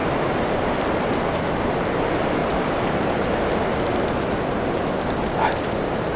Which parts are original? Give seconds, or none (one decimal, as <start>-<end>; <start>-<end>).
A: 0.5-2.4; 3.5-6.2